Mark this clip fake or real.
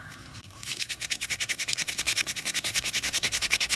fake